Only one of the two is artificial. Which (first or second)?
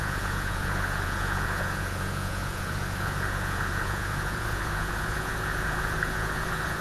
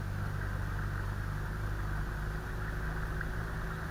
first